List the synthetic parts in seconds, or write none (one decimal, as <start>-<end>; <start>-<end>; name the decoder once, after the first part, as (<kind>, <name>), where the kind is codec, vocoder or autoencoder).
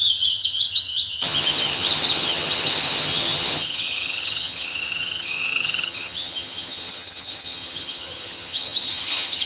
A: 0.0-9.5 (vocoder, HiFi-GAN)